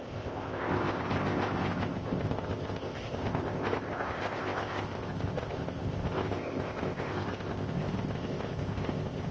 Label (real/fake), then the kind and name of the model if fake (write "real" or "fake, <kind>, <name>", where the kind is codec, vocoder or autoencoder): fake, codec, ZipCodec